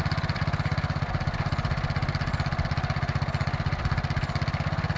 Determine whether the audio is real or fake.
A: real